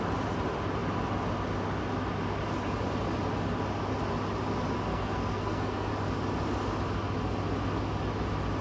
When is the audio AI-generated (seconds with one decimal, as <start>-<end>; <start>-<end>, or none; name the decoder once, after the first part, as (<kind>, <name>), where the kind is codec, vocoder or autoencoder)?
4.9-5.9 (codec, SNAC)